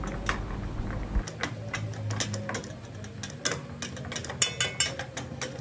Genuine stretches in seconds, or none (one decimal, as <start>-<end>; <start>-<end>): 0.0-5.6